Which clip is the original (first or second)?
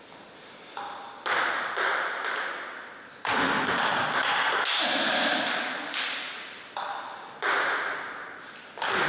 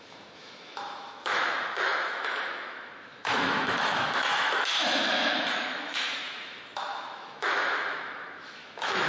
first